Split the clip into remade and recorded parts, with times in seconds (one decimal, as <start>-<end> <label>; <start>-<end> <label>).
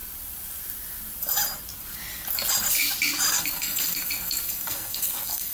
0.0-3.3 recorded; 3.3-5.5 remade